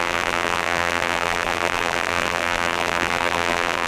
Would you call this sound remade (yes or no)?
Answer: yes